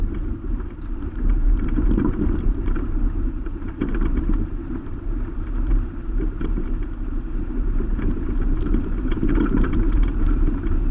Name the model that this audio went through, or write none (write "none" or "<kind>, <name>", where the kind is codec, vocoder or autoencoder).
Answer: vocoder, BigVGAN v2